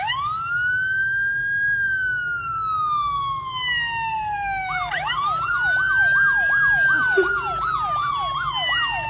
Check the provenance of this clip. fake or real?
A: real